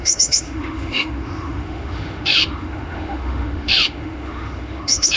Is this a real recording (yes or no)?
no